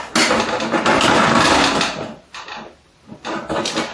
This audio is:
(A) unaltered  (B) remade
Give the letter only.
A